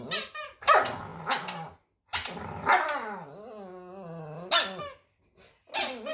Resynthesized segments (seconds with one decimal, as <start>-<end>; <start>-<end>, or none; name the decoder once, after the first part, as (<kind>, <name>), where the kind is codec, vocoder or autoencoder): none